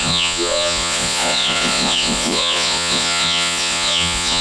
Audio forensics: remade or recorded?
remade